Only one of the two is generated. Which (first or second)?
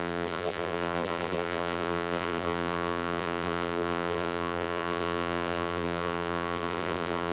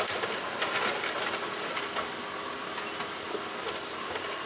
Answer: first